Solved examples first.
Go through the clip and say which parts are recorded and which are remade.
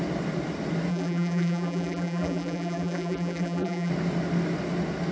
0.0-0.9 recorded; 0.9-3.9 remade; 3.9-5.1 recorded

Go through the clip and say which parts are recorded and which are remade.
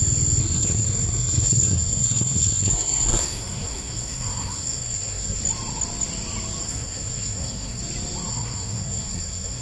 0.0-0.4 recorded; 0.4-5.4 remade; 5.4-6.6 recorded; 6.6-7.8 remade; 7.8-8.3 recorded; 8.3-9.6 remade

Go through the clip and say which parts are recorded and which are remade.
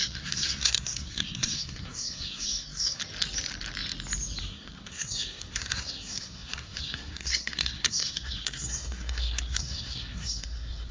0.0-3.0 remade; 3.0-4.4 recorded; 4.4-10.9 remade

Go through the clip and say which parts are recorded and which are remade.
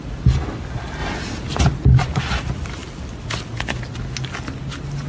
0.0-5.1 recorded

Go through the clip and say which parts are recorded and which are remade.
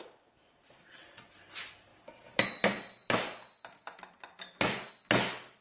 0.0-5.6 recorded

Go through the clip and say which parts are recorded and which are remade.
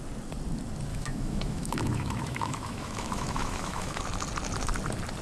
0.0-0.9 recorded; 0.9-4.0 remade; 4.0-5.2 recorded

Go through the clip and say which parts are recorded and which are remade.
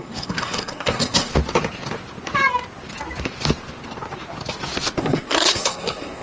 0.0-1.3 remade; 1.3-5.0 recorded; 5.0-6.2 remade